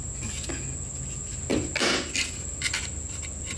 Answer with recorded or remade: recorded